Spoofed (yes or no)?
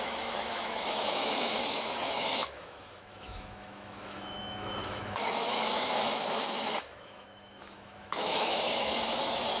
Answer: yes